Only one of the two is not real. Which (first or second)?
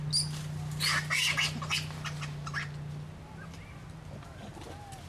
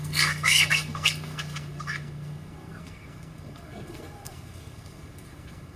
second